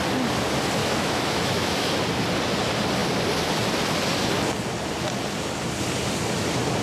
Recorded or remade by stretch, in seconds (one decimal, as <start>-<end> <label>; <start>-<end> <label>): 0.0-0.8 recorded; 0.8-1.9 remade; 1.9-6.8 recorded